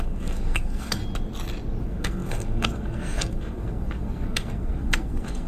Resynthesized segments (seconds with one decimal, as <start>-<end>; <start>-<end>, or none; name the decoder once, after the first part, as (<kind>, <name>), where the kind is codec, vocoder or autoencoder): 0.0-1.0 (codec, SNAC); 1.8-5.5